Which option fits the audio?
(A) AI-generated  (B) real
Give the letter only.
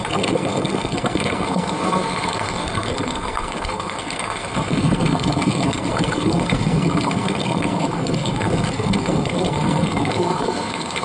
A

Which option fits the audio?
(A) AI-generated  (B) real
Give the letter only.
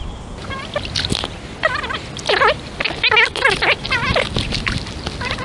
B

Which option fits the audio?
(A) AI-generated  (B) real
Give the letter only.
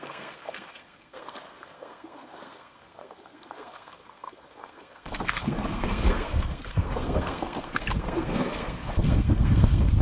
A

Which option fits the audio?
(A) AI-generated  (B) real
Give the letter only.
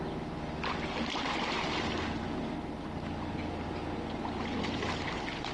B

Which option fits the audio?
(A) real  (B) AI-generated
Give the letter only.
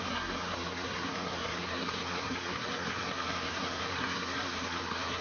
B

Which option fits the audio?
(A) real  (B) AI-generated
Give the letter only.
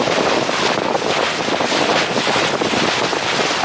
A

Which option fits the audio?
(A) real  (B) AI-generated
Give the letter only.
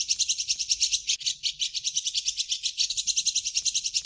A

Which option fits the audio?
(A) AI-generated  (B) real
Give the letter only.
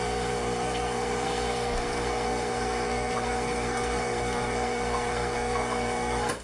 A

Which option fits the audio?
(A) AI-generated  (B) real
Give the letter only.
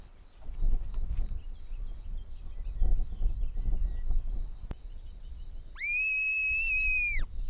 B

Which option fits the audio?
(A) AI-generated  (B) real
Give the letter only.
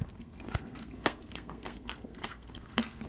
A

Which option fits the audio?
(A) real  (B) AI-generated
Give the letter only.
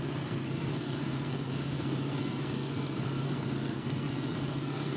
B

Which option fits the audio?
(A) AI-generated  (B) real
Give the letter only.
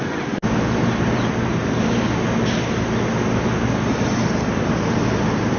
B